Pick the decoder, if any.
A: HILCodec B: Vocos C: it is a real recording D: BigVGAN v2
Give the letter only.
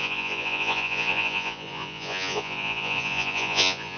B